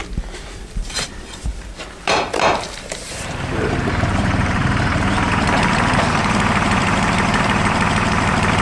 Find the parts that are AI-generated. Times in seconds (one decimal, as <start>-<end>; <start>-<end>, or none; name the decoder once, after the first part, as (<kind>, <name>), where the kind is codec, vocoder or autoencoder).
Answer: 0.0-8.6 (vocoder, BigVGAN v2)